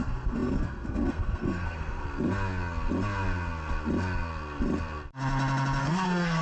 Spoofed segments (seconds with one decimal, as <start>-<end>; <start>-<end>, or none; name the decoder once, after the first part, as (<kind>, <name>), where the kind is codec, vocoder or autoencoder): 0.0-2.0 (codec, SNAC); 5.8-6.4